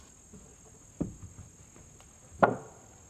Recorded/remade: recorded